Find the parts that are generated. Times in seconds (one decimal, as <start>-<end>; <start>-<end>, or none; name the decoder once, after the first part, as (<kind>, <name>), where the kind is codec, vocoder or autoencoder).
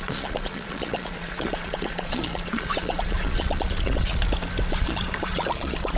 0.0-4.2 (vocoder, Vocos); 4.7-6.0